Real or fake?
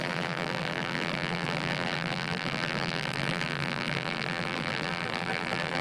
fake